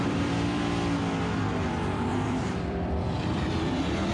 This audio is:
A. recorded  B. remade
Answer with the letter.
B